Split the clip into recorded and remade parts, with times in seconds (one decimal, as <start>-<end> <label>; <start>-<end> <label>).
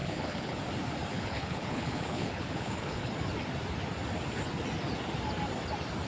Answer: 0.0-0.6 remade; 0.6-1.1 recorded; 1.1-3.1 remade; 3.1-6.1 recorded